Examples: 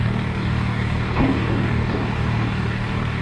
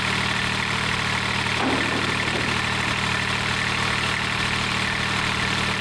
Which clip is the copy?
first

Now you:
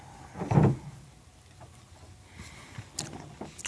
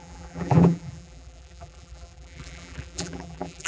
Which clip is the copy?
second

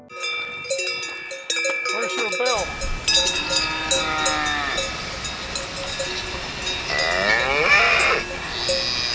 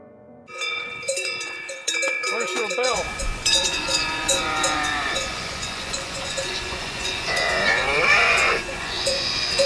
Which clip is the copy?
second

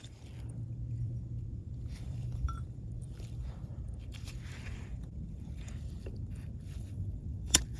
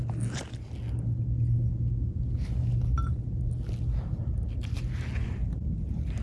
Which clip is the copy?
first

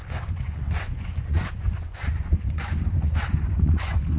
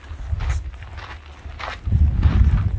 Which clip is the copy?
first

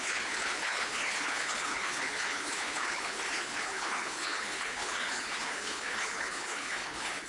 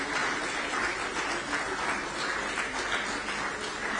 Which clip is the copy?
first